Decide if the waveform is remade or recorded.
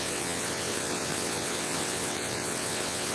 remade